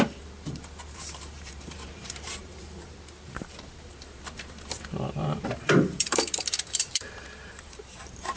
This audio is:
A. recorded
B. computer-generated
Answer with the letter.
B